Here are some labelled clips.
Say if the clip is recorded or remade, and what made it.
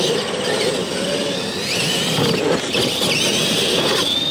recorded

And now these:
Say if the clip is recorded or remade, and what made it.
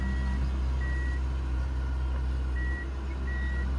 recorded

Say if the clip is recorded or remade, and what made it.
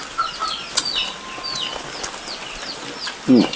recorded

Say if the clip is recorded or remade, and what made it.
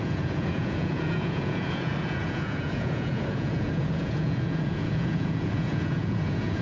remade, vocoder, Vocos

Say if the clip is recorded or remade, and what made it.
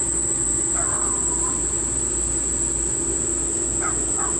recorded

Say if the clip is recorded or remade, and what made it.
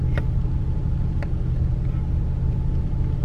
recorded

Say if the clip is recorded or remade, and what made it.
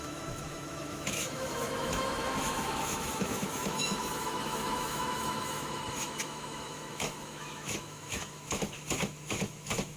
remade, autoencoder, DAC-VAE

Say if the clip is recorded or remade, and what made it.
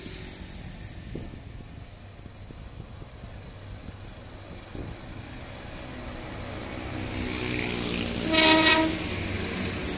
recorded